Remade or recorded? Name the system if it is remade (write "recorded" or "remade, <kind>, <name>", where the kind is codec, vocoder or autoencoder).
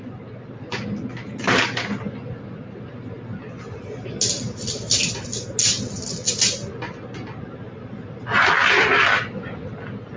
recorded